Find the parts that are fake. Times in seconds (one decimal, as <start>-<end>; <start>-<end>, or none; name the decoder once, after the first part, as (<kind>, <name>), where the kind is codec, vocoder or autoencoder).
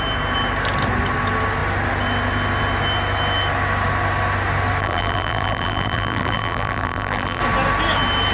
4.8-7.4 (vocoder, BigVGAN v2)